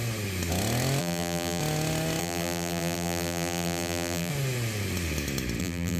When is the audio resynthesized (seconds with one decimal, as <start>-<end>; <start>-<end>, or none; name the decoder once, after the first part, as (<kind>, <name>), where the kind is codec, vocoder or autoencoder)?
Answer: 1.0-1.6 (vocoder, BigVGAN v2); 2.2-4.3; 5.6-6.0